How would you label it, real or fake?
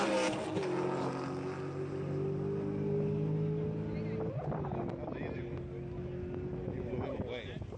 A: real